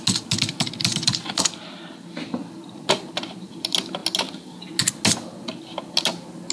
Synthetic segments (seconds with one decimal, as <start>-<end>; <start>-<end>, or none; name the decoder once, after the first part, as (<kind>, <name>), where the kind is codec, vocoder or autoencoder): 0.9-2.8 (vocoder, BigVGAN v2)